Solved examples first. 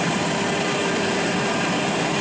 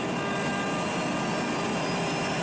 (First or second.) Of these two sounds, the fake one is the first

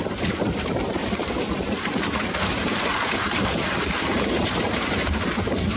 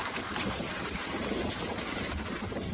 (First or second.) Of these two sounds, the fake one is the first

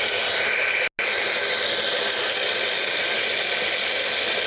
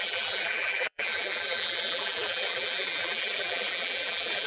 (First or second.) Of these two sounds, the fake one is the second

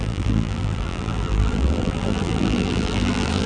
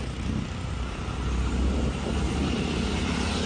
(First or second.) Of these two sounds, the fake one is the first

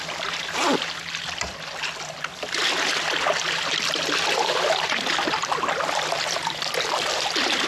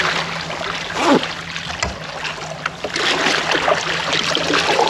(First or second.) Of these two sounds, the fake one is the first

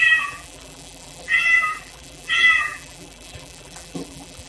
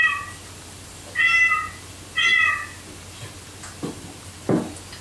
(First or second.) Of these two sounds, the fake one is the first